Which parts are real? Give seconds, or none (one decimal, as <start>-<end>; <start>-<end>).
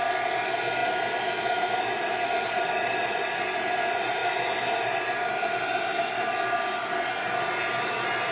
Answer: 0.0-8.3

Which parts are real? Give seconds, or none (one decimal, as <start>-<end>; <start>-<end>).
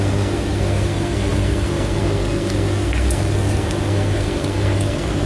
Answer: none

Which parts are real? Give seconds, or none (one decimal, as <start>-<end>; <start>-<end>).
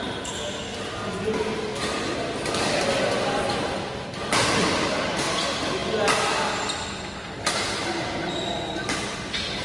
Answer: 0.0-9.6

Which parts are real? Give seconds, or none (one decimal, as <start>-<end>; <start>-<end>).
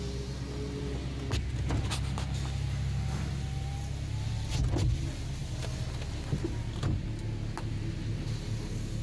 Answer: 0.0-9.0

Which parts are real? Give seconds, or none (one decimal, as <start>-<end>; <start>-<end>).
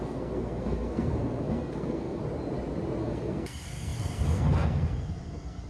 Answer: 2.2-3.0